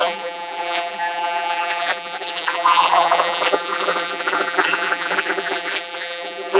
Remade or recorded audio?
remade